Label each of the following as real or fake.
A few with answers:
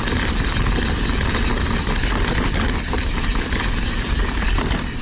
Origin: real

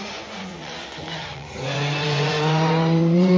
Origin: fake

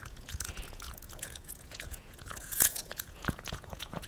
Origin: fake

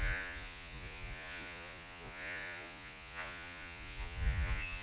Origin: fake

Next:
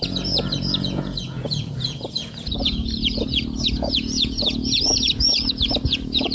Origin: fake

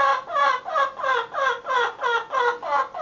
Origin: real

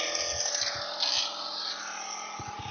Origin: real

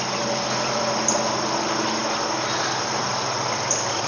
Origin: real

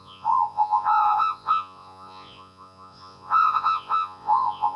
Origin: fake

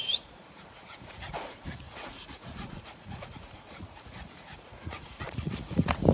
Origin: fake